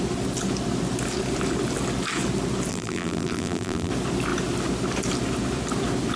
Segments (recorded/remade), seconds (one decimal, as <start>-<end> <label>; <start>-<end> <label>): 0.0-2.7 recorded; 2.7-3.9 remade; 3.9-6.2 recorded